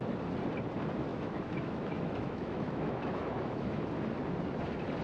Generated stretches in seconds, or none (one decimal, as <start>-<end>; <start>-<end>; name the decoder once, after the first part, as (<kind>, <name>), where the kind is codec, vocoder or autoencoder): 1.1-3.9 (autoencoder, DAC-VAE)